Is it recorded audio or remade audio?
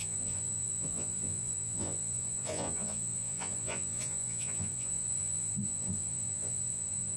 remade